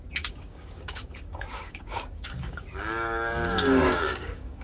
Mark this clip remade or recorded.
remade